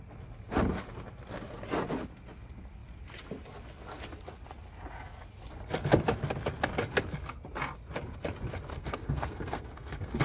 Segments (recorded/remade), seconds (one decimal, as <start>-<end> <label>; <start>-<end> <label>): 0.0-8.7 recorded; 8.7-10.2 remade